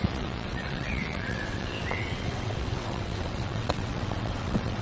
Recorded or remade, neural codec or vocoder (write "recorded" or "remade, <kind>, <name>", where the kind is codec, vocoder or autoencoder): remade, vocoder, WaveNeXt